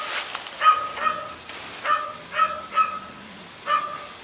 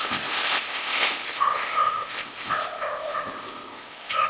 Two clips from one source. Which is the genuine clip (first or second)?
first